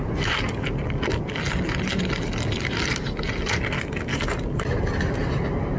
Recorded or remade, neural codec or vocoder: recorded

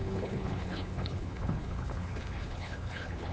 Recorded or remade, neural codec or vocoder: remade, codec, HILCodec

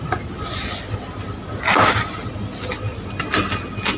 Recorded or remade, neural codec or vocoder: recorded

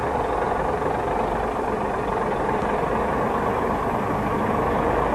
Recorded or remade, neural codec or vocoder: recorded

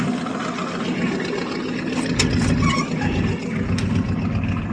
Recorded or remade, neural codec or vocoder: recorded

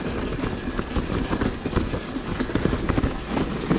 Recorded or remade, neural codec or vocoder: recorded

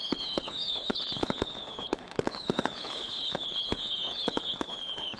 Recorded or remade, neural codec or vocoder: remade, codec, HILCodec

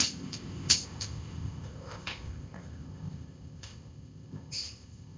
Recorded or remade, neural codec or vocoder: remade, codec, ZipCodec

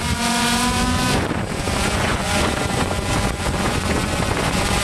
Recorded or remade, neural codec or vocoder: remade, vocoder, Vocos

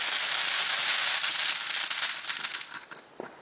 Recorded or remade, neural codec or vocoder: recorded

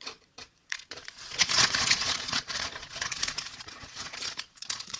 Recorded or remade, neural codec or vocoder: remade, vocoder, Vocos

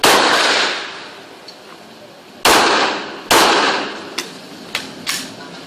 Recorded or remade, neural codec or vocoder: recorded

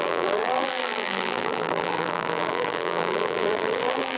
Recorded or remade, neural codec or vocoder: remade, vocoder, BigVGAN v2